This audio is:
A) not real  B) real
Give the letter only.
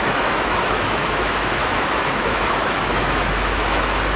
A